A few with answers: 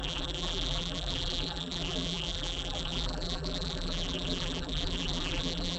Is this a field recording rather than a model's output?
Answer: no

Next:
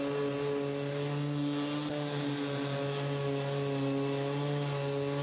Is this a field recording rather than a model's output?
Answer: yes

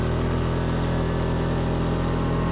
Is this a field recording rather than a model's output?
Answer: yes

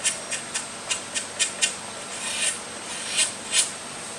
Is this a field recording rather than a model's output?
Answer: yes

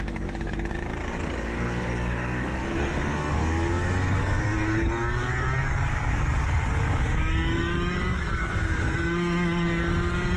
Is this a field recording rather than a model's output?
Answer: no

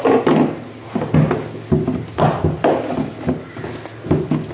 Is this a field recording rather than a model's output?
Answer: yes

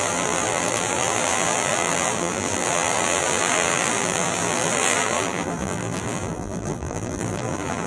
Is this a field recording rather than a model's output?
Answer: no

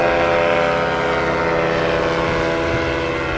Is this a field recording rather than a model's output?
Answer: yes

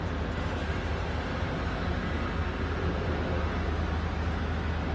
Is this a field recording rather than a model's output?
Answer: yes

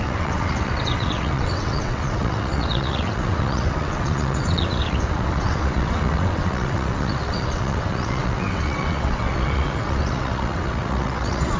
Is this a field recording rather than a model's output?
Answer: no